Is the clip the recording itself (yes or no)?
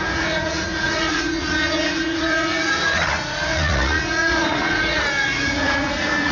no